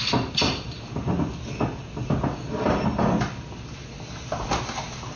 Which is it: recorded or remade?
recorded